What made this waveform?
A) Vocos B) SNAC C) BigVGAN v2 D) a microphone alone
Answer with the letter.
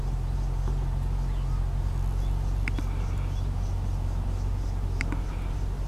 D